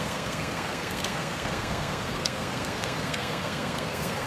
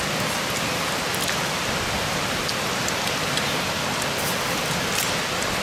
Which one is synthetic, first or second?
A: first